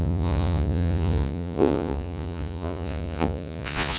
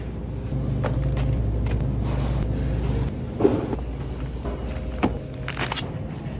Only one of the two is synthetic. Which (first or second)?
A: first